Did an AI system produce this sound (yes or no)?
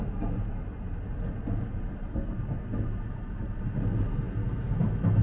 no